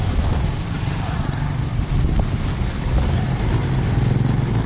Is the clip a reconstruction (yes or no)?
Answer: no